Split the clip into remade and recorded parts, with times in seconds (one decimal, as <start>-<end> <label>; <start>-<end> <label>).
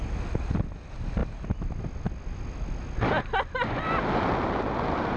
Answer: 0.0-5.2 recorded